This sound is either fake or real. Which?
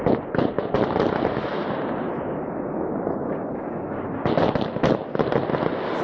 real